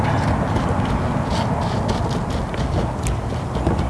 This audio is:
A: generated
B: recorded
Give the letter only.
B